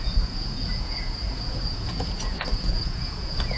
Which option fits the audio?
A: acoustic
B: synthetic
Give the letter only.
B